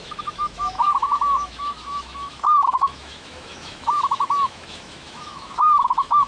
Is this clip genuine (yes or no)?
no